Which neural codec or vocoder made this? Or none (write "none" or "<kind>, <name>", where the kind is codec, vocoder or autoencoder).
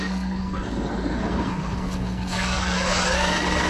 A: codec, SNAC